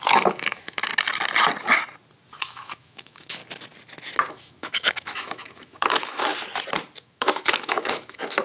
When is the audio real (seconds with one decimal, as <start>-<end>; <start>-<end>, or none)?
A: 0.9-2.4; 3.4-4.3; 6.3-7.0